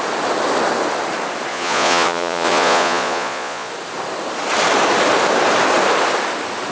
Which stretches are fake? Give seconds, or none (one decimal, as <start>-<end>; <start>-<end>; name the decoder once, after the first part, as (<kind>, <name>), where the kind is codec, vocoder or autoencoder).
1.5-3.7 (vocoder, Vocos)

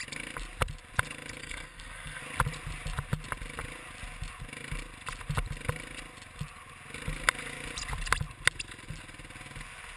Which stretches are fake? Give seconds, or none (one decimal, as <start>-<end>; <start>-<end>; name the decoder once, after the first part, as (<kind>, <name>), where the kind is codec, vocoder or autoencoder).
1.4-2.2 (codec, SNAC)

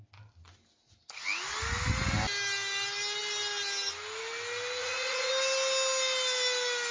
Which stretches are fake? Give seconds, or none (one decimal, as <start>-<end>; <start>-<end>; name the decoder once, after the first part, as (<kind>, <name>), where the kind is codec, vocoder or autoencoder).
4.8-5.3 (vocoder, Vocos)